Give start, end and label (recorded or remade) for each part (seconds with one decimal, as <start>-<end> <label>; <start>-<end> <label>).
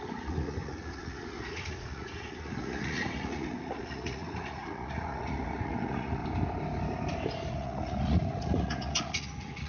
0.0-6.2 remade; 6.2-7.5 recorded; 7.5-9.7 remade